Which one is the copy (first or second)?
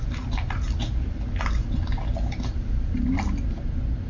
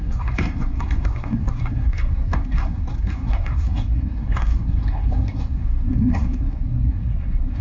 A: second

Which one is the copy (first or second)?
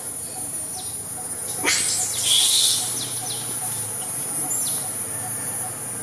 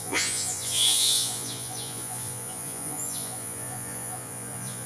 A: second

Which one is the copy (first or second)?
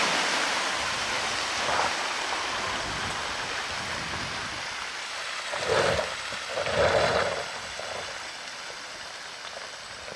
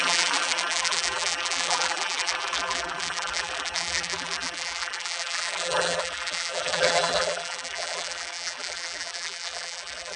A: second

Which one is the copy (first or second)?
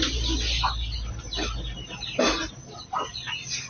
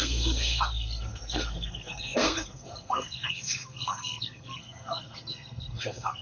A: second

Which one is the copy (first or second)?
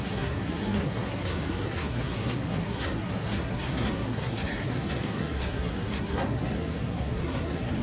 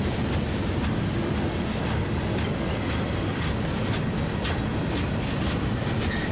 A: first